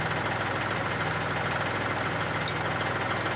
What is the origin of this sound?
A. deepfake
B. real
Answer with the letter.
B